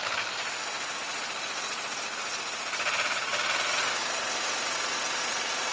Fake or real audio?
real